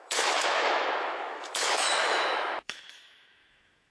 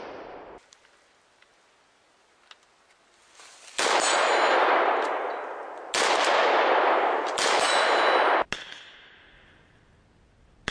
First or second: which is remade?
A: first